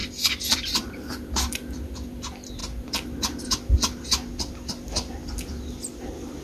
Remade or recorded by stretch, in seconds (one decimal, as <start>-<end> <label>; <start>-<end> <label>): 0.0-0.5 recorded; 0.5-2.6 remade; 2.6-6.4 recorded